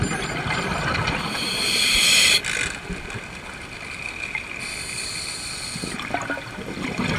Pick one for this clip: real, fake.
real